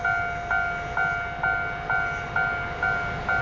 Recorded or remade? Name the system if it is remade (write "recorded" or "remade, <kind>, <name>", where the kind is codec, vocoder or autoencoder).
recorded